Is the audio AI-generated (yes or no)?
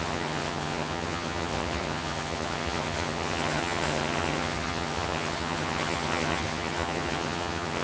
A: yes